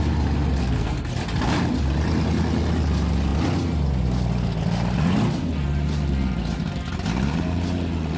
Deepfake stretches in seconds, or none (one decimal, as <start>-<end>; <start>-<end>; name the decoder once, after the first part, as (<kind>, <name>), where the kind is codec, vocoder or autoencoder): 0.6-1.1 (codec, SNAC)